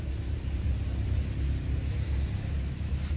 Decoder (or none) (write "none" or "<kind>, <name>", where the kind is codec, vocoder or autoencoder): none